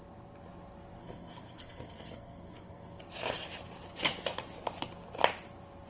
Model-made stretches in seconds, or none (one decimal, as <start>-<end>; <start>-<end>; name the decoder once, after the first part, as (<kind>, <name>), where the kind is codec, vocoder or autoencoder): 1.0-3.0 (codec, SNAC)